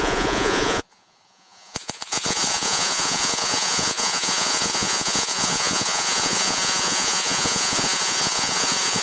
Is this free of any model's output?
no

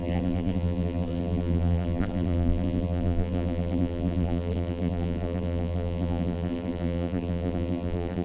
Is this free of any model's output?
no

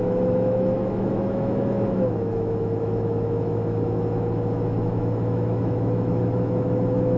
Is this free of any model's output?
no